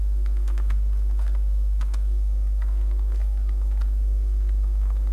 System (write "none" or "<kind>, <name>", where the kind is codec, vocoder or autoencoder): codec, SNAC